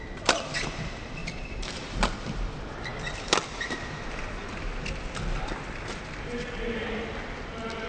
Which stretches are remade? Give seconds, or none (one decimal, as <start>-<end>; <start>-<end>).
1.2-1.8